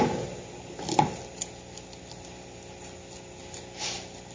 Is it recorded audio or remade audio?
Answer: recorded